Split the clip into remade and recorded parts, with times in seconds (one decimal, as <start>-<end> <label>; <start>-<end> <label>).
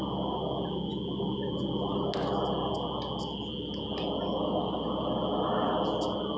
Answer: 0.0-6.4 recorded